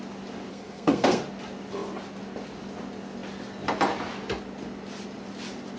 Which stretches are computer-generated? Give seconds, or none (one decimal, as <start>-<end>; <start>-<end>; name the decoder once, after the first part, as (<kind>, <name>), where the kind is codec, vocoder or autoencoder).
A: 0.5-1.2 (codec, SNAC)